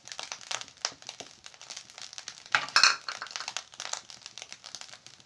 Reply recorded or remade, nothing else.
recorded